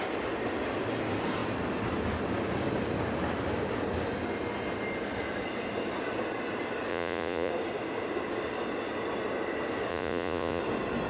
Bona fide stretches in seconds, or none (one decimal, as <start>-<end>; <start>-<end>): 0.0-6.9; 7.5-9.9; 10.6-11.1